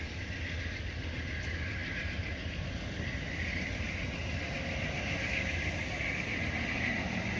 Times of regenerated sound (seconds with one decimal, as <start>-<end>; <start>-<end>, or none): none